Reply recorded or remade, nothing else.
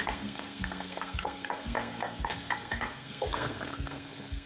remade